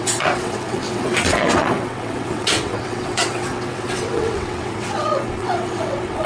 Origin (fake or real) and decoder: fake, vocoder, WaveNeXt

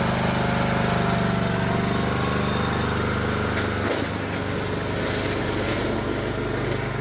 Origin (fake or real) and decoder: real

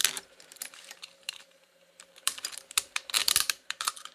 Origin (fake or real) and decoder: fake, vocoder, BigVGAN v2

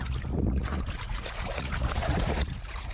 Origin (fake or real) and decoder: fake, vocoder, Vocos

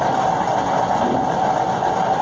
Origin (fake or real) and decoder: real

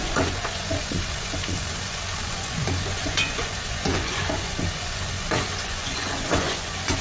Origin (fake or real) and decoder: fake, vocoder, Vocos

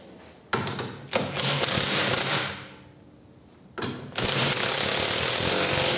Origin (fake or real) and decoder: real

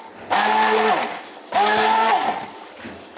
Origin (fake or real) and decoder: real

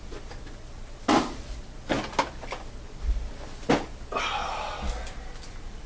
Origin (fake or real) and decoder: real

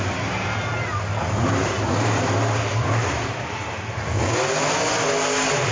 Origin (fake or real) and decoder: real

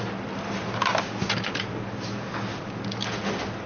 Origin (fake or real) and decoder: real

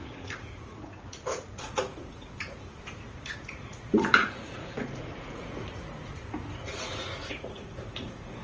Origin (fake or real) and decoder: fake, vocoder, Vocos